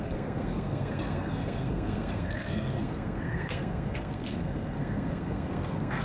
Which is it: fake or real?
fake